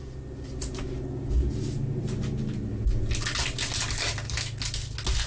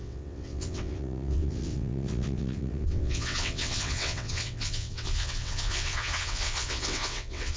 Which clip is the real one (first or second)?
first